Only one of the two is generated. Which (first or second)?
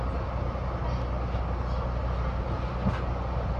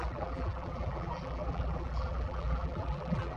second